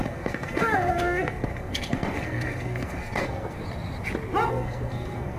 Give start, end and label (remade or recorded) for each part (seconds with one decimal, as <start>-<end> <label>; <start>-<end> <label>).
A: 0.0-3.6 remade; 3.6-4.5 recorded; 4.5-5.4 remade